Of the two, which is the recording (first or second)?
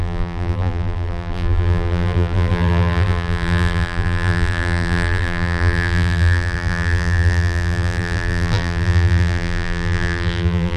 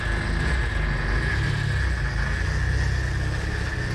second